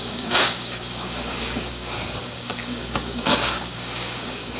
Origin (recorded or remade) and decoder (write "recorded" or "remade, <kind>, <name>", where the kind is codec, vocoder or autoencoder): remade, codec, DAC